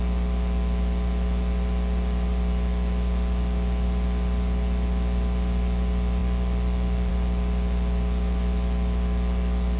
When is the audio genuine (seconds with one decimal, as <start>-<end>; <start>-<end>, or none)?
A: 0.0-9.8